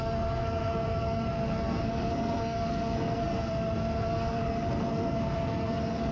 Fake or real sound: fake